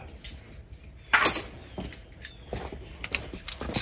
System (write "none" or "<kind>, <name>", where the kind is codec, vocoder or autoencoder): none